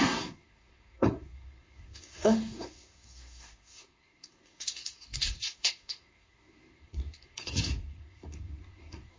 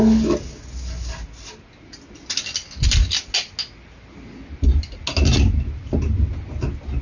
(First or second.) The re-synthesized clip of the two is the first